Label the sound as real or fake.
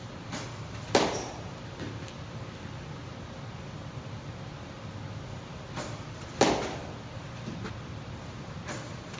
real